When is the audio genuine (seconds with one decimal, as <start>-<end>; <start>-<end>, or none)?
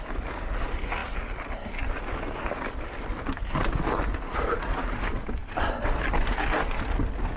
0.0-7.4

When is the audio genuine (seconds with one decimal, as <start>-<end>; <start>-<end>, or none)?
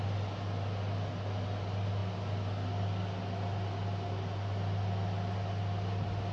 0.0-6.3